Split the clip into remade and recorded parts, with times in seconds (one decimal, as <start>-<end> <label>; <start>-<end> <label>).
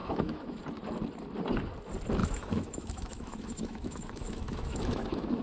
0.0-0.6 remade; 0.6-2.2 recorded; 2.2-5.4 remade